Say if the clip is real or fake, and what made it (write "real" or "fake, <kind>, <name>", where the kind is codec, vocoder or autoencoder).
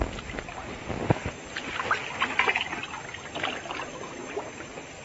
real